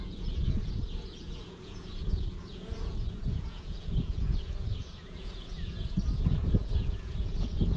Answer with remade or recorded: remade